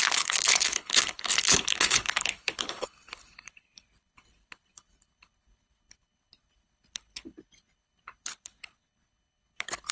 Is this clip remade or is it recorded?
remade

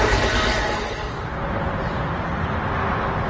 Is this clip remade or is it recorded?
recorded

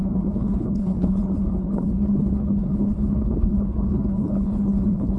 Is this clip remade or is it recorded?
remade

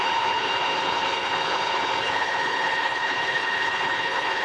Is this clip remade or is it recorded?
remade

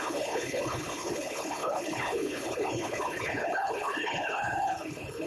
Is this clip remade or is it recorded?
remade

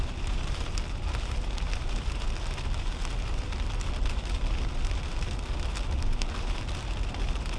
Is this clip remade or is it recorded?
recorded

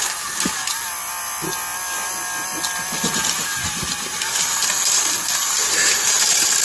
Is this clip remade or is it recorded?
recorded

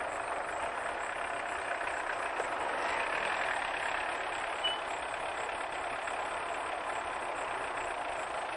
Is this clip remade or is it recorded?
recorded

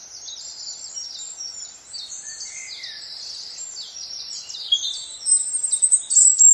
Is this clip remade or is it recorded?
recorded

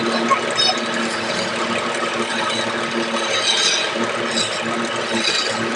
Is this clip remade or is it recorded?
recorded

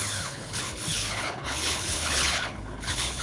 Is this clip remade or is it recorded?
remade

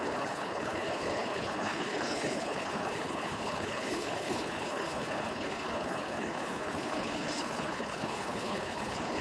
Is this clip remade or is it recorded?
remade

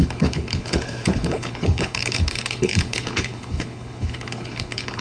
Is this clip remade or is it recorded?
remade